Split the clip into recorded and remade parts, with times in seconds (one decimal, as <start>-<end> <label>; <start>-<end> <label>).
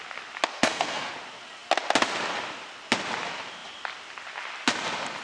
0.0-0.5 recorded; 0.5-1.1 remade; 1.1-5.2 recorded